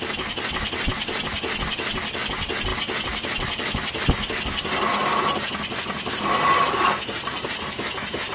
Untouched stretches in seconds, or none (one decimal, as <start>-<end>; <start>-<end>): 0.0-8.3

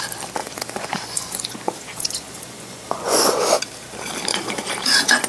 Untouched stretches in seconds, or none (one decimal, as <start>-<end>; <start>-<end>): 0.0-0.4; 3.5-4.3

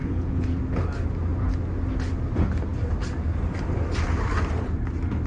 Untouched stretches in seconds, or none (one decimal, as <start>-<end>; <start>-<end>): 0.6-5.3

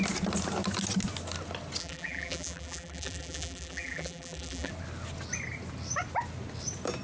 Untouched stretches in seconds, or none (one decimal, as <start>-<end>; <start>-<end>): 0.0-1.8; 4.7-7.0

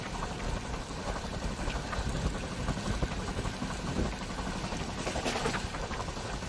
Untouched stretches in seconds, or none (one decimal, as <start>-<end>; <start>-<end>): 0.0-1.3; 2.1-6.5

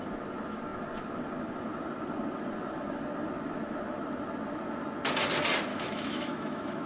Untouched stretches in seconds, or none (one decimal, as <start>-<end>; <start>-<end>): 0.0-5.7

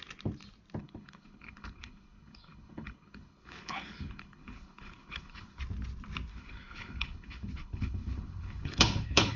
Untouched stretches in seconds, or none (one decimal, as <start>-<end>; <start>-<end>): 0.0-0.8; 5.6-6.3